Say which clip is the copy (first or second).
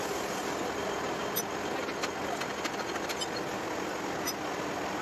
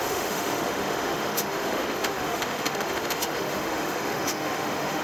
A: second